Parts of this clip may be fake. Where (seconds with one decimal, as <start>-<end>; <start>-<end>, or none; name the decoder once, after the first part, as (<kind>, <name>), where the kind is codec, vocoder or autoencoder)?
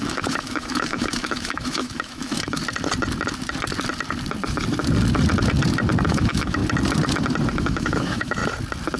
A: 0.0-2.6 (autoencoder, DAC-VAE); 6.1-6.6; 7.6-8.4